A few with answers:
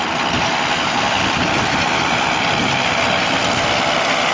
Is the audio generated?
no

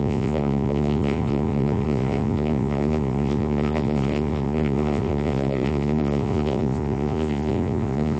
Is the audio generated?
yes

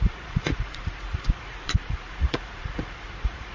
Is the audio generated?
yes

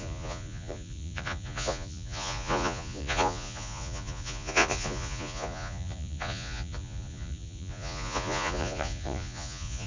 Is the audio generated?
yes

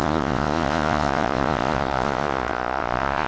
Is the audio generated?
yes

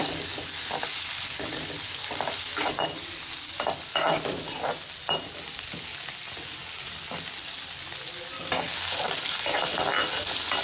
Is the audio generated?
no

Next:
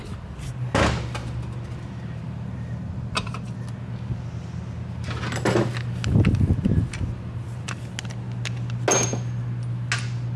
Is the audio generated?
no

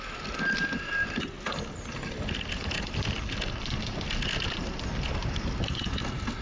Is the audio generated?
no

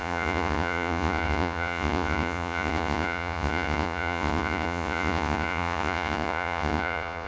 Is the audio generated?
yes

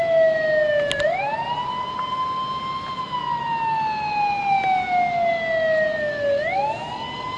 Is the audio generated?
no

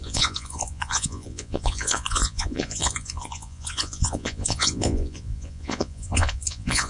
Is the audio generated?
yes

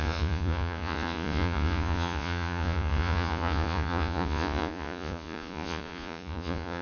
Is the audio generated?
yes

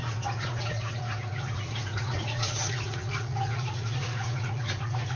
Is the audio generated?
yes